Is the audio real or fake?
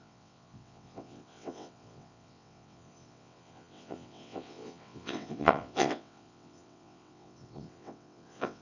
fake